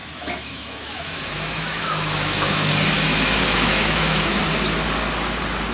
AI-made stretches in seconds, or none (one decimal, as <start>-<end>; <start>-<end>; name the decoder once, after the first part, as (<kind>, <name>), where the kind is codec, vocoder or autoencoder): 0.0-2.7 (autoencoder, DAC-VAE); 3.1-4.4